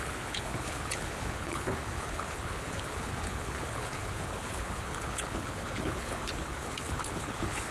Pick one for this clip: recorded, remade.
remade